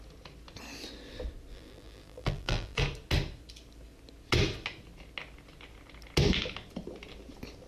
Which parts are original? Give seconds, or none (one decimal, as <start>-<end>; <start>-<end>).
0.0-1.5; 2.8-7.7